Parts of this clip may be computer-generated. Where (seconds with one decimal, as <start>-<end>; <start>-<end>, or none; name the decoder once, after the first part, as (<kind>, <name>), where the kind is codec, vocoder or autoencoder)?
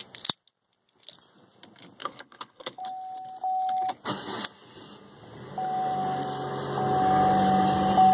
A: 2.0-2.8 (codec, HILCodec)